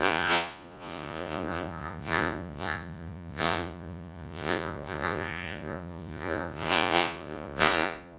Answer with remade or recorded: remade